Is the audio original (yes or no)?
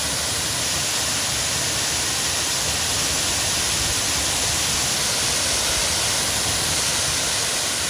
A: yes